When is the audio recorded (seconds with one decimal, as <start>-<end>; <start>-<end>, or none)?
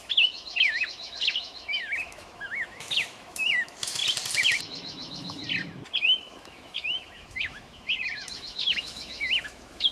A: 4.0-4.6; 5.4-6.0